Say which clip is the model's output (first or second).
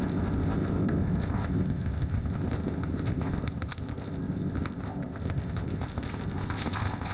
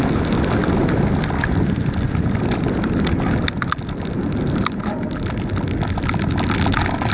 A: first